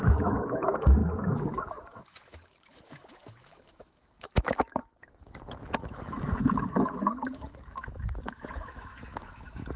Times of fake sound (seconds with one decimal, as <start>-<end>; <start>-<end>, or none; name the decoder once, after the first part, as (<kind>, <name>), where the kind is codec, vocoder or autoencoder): 0.0-9.8 (autoencoder, DAC-VAE)